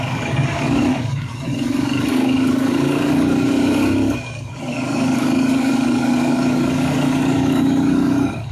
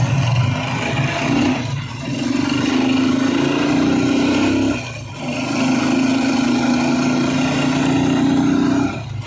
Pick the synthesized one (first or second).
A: first